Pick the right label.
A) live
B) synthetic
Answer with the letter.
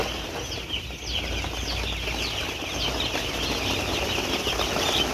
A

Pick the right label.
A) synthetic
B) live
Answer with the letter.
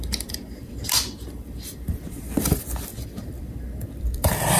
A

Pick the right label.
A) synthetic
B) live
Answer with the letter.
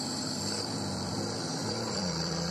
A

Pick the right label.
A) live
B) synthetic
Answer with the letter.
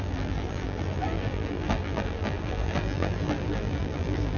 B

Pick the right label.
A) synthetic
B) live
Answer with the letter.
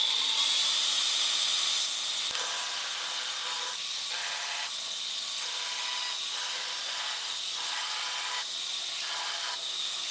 B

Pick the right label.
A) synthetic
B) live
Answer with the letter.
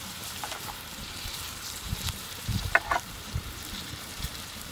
A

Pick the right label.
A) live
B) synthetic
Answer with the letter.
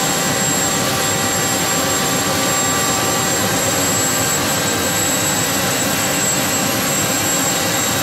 A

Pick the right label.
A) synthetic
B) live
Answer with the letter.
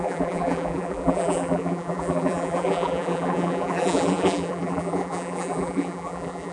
A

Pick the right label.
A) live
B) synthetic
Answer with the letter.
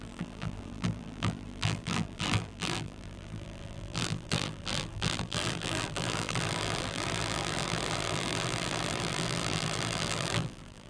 B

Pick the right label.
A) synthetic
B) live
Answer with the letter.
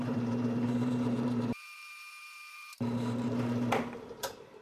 A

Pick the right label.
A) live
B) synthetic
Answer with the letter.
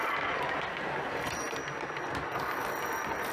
A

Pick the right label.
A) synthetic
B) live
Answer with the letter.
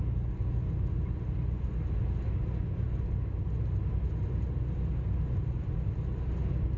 B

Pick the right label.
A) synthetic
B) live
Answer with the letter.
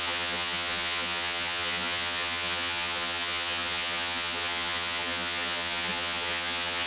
A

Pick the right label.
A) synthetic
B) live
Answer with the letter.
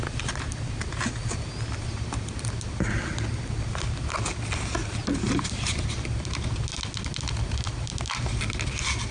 B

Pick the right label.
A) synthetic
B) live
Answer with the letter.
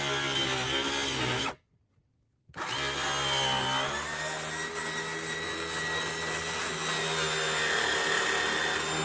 B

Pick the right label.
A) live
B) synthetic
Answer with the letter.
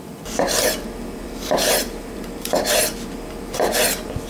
B